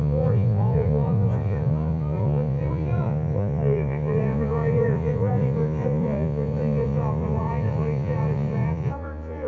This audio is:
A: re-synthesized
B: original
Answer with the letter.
A